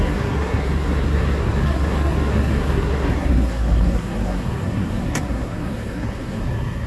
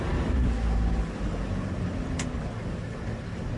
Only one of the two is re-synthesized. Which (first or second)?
first